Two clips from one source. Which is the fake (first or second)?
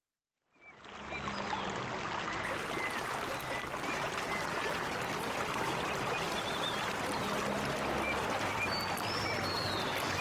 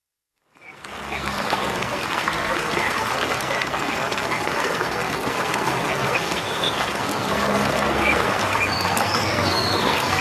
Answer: second